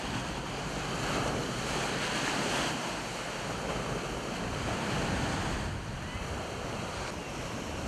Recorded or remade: recorded